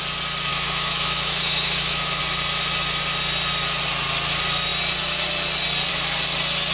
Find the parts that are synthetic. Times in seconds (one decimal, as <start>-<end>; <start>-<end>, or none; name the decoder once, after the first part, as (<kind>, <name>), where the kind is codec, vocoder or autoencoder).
0.5-2.2 (autoencoder, DAC-VAE)